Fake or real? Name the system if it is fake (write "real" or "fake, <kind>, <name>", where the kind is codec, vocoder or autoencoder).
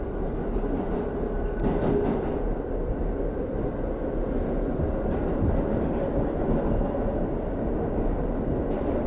real